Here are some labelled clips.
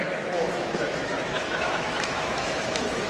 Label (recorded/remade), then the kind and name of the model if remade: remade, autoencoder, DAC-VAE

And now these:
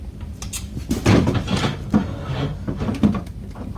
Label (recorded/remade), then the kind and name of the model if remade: recorded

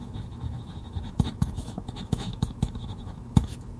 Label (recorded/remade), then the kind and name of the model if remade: remade, autoencoder, DAC-VAE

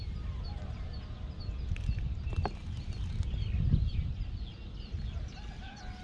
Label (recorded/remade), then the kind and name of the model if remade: recorded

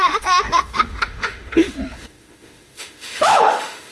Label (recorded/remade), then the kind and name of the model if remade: remade, autoencoder, DAC-VAE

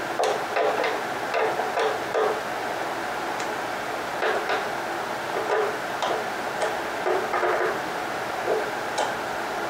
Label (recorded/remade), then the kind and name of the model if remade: recorded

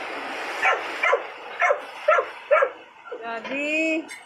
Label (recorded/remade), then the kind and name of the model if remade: recorded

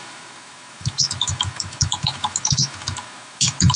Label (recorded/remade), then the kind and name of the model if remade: remade, autoencoder, DAC-VAE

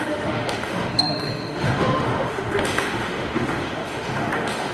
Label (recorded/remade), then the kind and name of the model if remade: remade, autoencoder, DAC-VAE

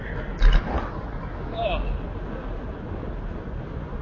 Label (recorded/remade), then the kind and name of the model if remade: recorded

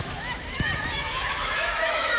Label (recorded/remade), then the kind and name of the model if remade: remade, autoencoder, DAC-VAE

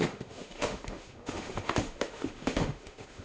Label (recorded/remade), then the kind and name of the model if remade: remade, autoencoder, DAC-VAE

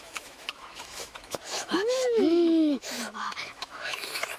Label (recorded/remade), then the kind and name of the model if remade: remade, autoencoder, DAC-VAE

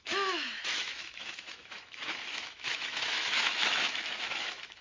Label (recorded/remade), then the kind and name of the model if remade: remade, autoencoder, DAC-VAE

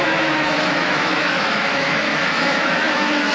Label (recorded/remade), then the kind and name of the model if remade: remade, autoencoder, DAC-VAE